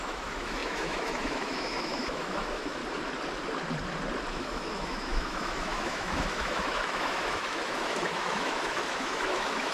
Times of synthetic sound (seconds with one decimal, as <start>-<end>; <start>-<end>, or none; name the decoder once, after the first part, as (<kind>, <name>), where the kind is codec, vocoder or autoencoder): 0.0-2.8 (autoencoder, DAC-VAE); 4.3-9.7